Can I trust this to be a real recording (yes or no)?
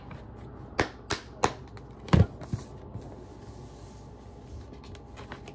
yes